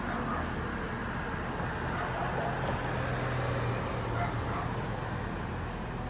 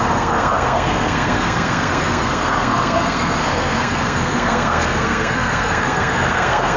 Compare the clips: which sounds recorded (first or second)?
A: first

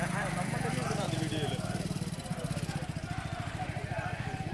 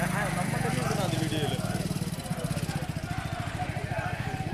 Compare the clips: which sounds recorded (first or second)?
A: second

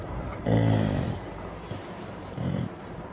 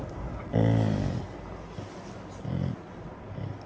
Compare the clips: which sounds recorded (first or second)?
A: second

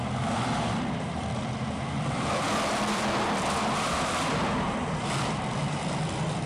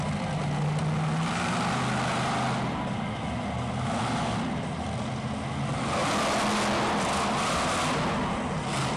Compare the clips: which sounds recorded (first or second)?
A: second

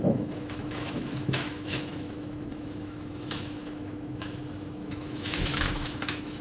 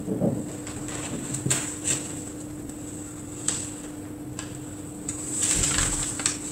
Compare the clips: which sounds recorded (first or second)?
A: second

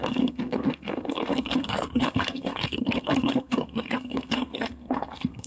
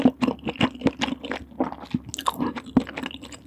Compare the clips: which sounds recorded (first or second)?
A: second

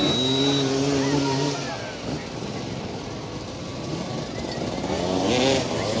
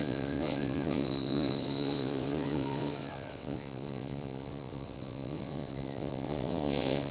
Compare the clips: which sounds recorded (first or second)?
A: first